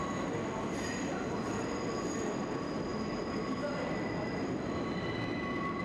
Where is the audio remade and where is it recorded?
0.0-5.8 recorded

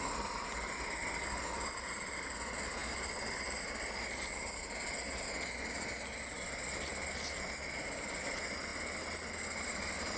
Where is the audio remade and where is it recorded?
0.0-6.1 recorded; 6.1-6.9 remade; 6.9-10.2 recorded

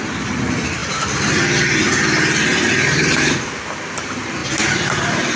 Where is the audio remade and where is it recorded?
0.0-2.5 recorded; 2.5-3.3 remade; 3.3-4.4 recorded; 4.4-5.4 remade

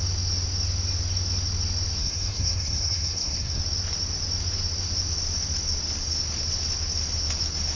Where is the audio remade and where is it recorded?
0.0-2.0 recorded; 2.0-3.6 remade; 3.6-7.8 recorded

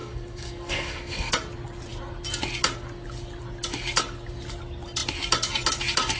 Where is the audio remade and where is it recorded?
0.0-1.3 remade; 1.3-6.2 recorded